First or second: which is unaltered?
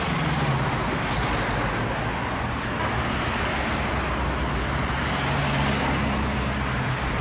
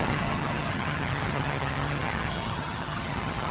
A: first